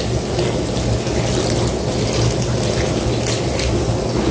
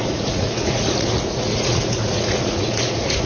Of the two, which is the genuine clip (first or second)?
first